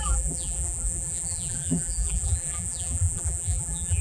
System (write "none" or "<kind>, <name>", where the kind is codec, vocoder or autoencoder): vocoder, BigVGAN v2